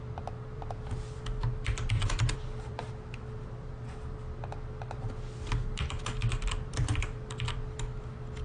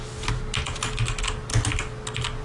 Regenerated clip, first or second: first